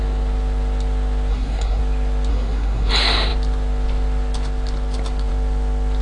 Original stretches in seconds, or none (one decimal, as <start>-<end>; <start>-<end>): 0.0-1.3; 1.8-2.3; 2.9-6.0

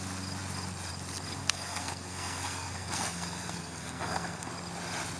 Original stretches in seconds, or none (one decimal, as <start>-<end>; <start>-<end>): 0.0-1.4; 4.5-5.2